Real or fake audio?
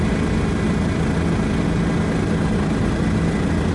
real